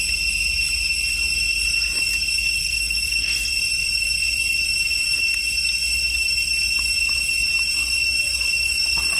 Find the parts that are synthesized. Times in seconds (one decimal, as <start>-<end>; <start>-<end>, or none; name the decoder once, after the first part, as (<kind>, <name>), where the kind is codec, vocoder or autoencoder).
2.6-3.5 (codec, SNAC)